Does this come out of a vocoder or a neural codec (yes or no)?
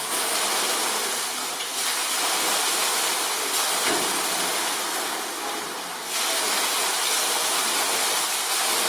no